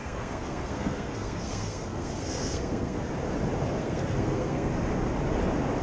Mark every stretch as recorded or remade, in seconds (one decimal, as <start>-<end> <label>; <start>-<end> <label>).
0.0-3.0 remade; 3.0-3.8 recorded; 3.8-4.7 remade; 4.7-5.8 recorded